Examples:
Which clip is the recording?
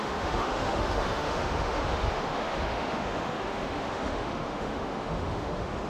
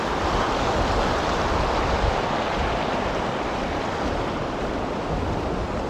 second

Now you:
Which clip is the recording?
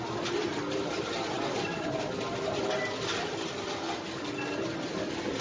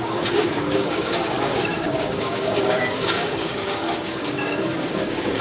first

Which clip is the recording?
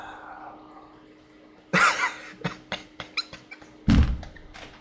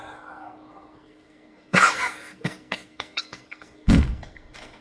first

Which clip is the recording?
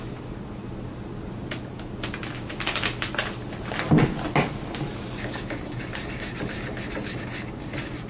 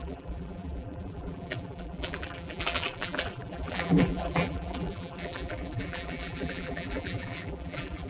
first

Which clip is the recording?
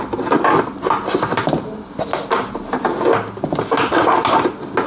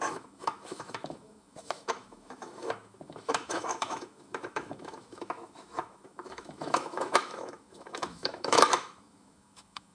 first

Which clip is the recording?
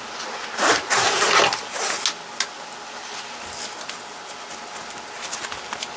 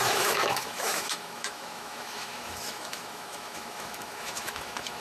first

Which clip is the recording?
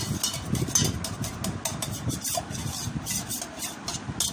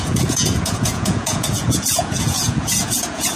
first